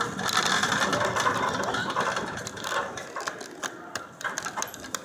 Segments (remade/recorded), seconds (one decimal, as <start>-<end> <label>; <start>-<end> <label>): 0.0-5.0 recorded